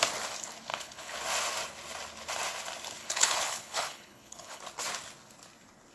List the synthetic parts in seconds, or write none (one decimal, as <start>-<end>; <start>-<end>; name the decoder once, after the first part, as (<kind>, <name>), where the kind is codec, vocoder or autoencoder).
0.7-1.2 (codec, HILCodec); 3.0-4.6